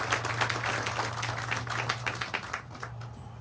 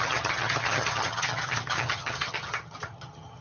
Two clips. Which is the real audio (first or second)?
first